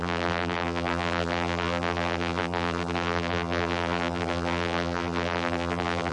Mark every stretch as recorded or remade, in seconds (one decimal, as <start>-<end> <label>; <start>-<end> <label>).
0.0-6.1 remade